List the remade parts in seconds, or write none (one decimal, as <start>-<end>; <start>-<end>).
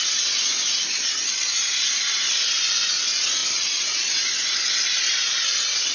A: none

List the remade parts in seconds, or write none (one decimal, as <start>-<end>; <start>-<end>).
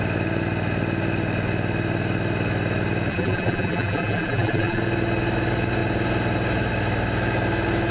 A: 3.1-4.8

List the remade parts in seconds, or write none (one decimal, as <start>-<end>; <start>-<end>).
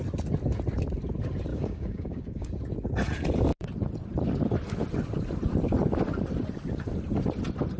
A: 1.5-2.5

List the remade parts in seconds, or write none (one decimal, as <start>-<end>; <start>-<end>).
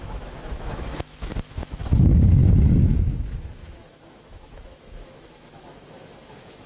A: 0.0-1.8; 2.8-6.7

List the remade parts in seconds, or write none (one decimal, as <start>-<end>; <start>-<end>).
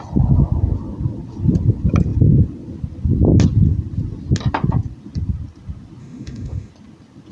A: 6.0-6.7